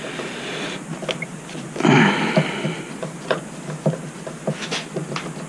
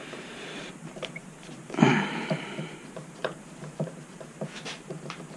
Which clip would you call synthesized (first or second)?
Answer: second